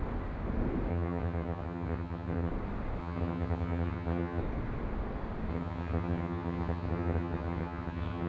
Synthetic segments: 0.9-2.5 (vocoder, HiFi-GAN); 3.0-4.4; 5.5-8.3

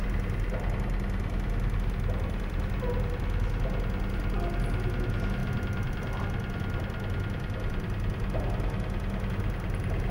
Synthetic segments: none

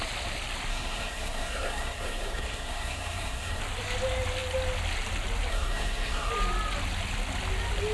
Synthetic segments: 0.7-3.6 (codec, SNAC); 5.5-6.3